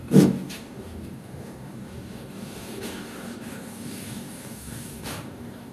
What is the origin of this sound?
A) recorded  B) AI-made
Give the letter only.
B